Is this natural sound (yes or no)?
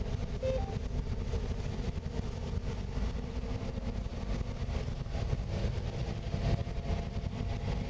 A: yes